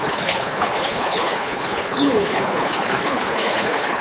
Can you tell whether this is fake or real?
fake